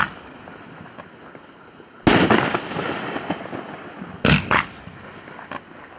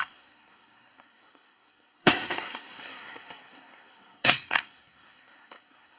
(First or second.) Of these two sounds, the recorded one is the first